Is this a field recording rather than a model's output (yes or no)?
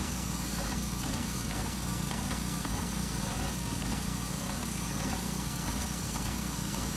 no